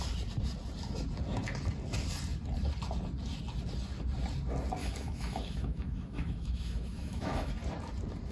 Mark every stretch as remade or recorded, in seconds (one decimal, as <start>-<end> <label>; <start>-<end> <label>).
0.0-4.8 recorded; 4.8-7.5 remade; 7.5-8.3 recorded